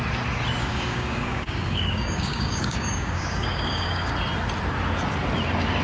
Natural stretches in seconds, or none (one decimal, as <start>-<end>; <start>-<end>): 0.0-0.6; 4.1-5.8